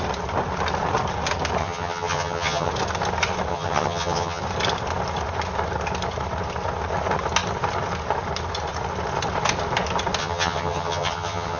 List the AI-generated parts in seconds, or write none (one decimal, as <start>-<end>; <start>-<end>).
1.6-2.7; 3.5-4.4; 10.2-11.6